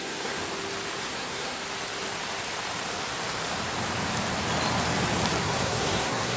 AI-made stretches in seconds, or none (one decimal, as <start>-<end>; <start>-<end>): 0.0-0.4; 1.0-1.6; 5.4-6.4